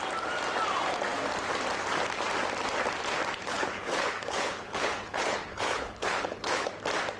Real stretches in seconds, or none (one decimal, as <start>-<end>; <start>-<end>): 0.0-3.4; 6.7-7.2